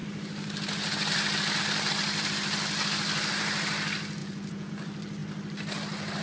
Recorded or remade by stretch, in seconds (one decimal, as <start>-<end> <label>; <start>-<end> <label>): 0.0-4.2 recorded; 4.2-4.7 remade; 4.7-6.2 recorded